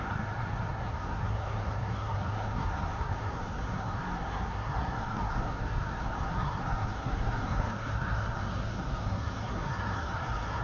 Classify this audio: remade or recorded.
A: remade